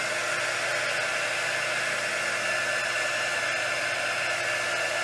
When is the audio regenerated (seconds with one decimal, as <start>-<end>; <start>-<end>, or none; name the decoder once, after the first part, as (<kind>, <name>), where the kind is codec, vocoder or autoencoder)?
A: none